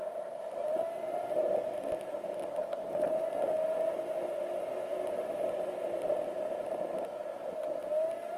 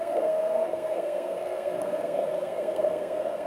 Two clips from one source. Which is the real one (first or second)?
first